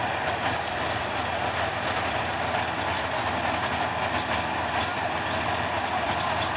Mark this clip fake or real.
fake